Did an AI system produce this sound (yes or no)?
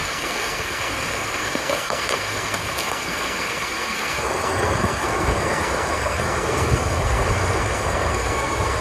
yes